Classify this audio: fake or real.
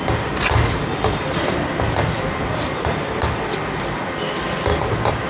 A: real